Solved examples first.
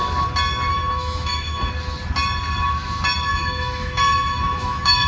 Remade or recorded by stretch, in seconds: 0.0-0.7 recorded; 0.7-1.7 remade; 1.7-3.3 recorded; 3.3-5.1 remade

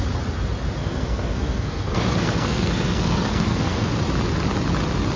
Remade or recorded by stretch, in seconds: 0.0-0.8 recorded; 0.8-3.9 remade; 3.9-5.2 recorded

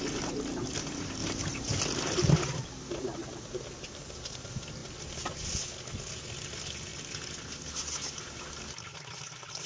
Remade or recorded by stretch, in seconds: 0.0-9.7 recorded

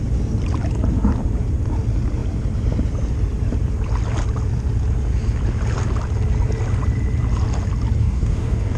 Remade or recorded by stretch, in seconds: 0.0-8.0 recorded; 8.0-8.8 remade